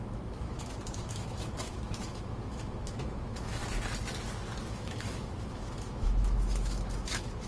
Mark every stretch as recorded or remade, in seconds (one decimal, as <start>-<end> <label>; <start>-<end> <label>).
0.0-3.6 remade; 3.6-4.7 recorded; 4.7-7.5 remade